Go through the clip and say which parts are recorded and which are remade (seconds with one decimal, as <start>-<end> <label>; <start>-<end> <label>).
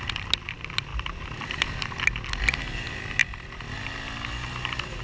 0.0-5.0 recorded